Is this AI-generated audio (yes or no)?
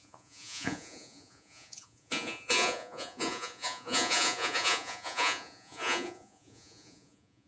yes